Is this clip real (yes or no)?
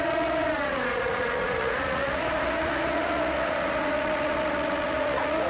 no